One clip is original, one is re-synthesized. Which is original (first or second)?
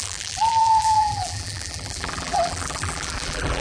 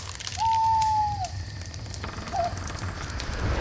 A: second